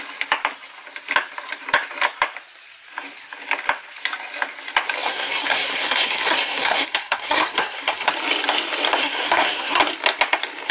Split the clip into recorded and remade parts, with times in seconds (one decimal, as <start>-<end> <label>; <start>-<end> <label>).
0.0-5.0 recorded; 5.0-8.1 remade; 8.1-9.0 recorded; 9.0-9.8 remade; 9.8-10.7 recorded